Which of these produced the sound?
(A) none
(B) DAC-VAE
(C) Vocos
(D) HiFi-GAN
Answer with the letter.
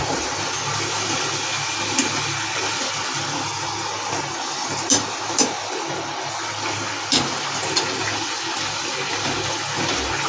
A